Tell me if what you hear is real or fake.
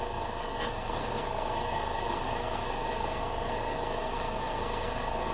fake